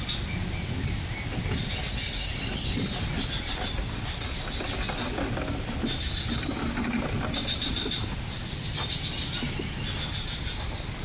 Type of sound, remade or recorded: recorded